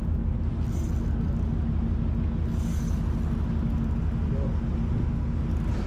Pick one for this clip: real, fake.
real